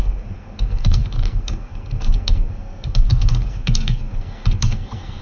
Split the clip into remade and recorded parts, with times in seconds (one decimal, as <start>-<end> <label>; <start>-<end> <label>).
0.0-5.2 remade